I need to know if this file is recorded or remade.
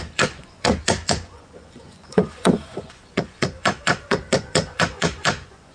remade